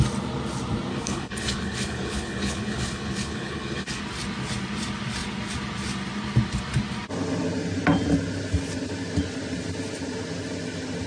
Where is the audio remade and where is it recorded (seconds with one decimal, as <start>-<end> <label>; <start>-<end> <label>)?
0.0-0.9 recorded; 0.9-4.0 remade; 4.0-11.1 recorded